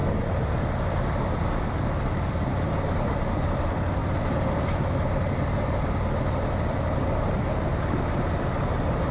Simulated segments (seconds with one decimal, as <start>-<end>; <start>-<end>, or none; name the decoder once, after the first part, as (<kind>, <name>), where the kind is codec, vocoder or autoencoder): none

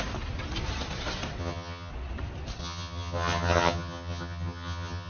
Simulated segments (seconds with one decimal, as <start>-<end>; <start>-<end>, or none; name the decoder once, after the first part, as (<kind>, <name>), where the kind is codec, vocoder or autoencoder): 1.4-1.9 (vocoder, HiFi-GAN); 2.6-5.1

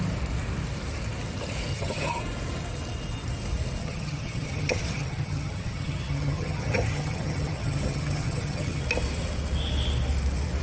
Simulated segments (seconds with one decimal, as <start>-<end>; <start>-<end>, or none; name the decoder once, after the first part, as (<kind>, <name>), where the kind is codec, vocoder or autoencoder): 1.7-2.2 (vocoder, HiFi-GAN); 3.8-8.8

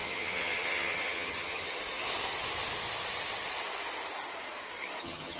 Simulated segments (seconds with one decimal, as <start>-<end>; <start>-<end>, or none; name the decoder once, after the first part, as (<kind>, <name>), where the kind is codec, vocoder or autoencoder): 0.0-1.8 (vocoder, HiFi-GAN); 5.0-5.4